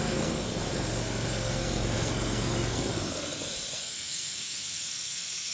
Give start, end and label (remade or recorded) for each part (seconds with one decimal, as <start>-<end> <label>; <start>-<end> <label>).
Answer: 0.0-5.5 remade